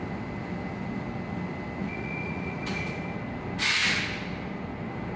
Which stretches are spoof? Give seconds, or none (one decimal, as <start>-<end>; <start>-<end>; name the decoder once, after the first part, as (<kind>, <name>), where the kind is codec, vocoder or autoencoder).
1.8-3.0 (vocoder, Vocos)